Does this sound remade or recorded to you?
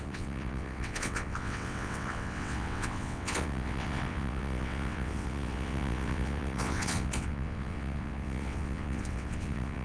remade